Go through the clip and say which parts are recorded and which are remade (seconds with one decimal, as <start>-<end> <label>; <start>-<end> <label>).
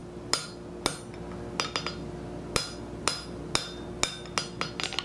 0.0-5.0 recorded